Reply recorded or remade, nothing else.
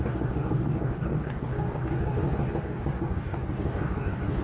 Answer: remade